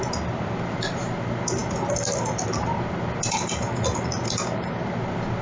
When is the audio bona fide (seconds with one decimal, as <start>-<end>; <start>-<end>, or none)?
0.0-5.4